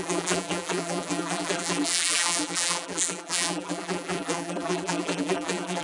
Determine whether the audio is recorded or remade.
remade